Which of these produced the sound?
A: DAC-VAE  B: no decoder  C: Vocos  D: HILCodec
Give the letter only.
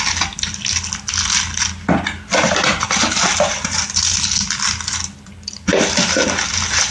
B